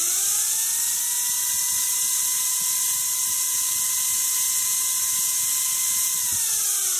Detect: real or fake real